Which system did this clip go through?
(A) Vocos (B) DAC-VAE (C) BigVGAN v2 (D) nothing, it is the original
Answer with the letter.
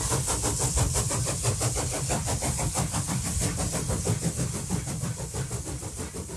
C